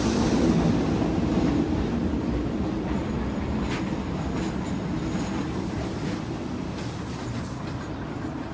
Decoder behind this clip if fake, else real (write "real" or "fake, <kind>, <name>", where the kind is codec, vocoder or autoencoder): real